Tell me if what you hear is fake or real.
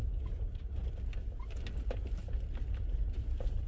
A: real